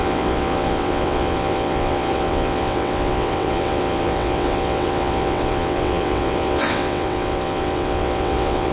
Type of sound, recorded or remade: remade